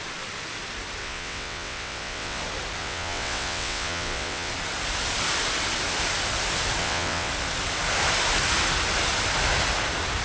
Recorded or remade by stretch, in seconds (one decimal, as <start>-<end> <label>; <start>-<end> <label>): 0.0-1.0 recorded; 1.0-2.4 remade; 2.4-2.8 recorded; 2.8-4.5 remade; 4.5-6.8 recorded; 6.8-7.3 remade; 7.3-10.2 recorded